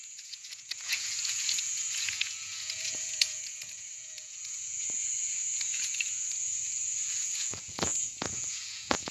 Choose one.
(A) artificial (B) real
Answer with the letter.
A